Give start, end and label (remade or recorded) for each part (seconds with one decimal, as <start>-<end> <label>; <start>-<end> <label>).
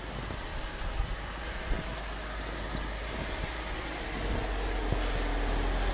0.0-5.9 recorded